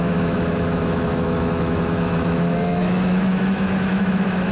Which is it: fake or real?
fake